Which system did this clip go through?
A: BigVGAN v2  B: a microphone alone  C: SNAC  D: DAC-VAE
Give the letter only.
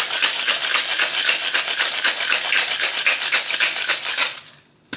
B